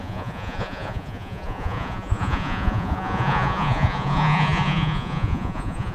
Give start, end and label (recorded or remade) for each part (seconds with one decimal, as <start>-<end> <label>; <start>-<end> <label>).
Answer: 0.0-5.9 remade